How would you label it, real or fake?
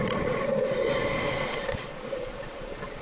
fake